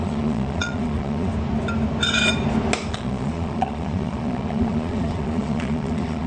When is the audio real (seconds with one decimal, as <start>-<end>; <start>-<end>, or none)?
1.3-2.9